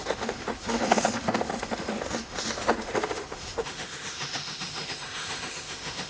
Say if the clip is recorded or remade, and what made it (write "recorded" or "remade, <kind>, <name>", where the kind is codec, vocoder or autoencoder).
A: remade, autoencoder, DAC-VAE